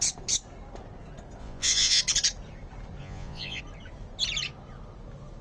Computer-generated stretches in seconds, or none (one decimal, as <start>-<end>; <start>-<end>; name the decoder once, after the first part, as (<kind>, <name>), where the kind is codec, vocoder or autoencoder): 1.4-2.0 (vocoder, Vocos); 3.0-3.6